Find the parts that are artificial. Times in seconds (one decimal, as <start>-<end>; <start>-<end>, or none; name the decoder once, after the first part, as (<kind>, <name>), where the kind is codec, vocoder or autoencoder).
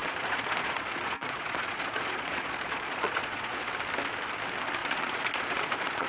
0.0-3.7 (vocoder, Vocos); 4.8-6.1